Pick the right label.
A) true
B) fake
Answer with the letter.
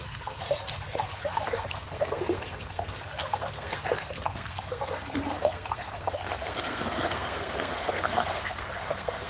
B